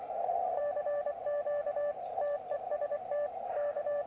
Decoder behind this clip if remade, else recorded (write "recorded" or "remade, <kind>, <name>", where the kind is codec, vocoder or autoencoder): remade, vocoder, BigVGAN v2